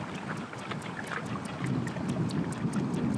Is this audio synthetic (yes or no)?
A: no